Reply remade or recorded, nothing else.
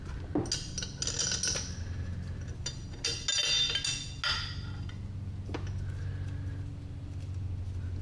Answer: recorded